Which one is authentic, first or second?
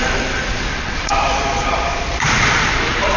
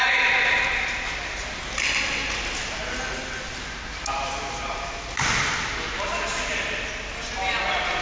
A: second